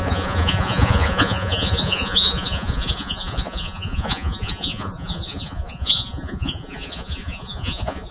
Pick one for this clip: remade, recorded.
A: remade